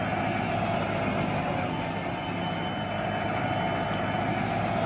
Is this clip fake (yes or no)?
no